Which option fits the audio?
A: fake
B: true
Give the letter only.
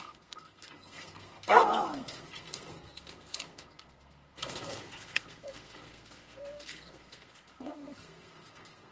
A